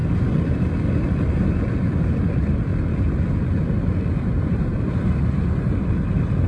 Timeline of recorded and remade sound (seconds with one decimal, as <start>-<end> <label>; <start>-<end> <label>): 0.0-2.3 recorded; 2.3-2.7 remade; 2.7-3.4 recorded; 3.4-6.5 remade